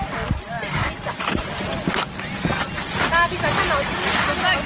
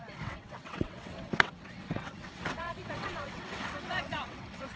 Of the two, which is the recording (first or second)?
first